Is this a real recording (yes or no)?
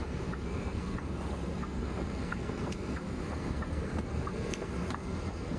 no